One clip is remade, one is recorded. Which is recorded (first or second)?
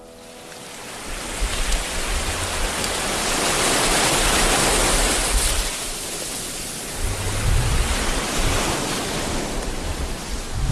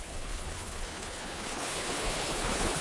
first